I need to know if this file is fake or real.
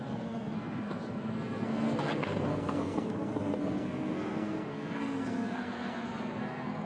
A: fake